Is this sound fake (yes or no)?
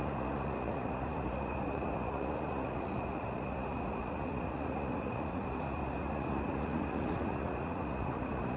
yes